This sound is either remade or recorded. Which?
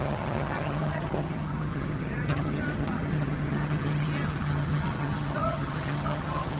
remade